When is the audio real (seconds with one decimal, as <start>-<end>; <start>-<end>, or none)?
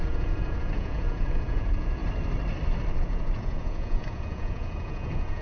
2.0-2.9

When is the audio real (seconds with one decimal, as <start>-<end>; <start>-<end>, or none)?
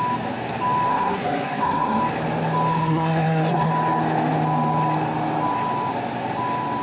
0.0-0.9; 2.0-2.7; 3.7-6.8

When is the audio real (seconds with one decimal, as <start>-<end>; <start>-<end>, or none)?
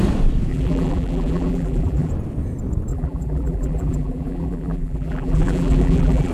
0.0-0.5; 2.1-2.9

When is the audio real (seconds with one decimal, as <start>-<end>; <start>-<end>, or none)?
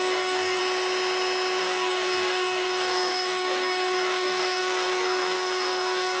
0.6-1.6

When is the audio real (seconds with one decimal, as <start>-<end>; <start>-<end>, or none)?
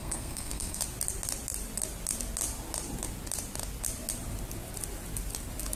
0.8-5.8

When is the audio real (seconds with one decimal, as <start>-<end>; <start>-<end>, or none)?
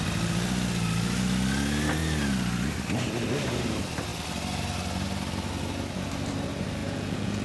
0.0-6.8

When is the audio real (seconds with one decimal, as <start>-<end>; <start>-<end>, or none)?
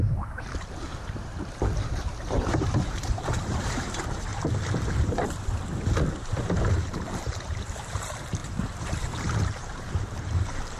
4.3-6.2